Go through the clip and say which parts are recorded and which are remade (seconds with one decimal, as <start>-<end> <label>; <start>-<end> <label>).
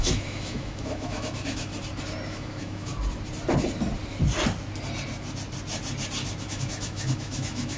0.0-1.7 remade; 1.7-2.3 recorded; 2.3-2.9 remade; 2.9-6.4 recorded; 6.4-7.8 remade